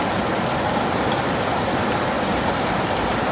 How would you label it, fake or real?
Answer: real